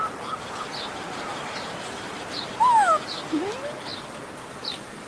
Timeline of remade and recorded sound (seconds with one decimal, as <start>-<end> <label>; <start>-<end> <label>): 0.0-1.3 recorded; 1.3-2.2 remade; 2.2-5.1 recorded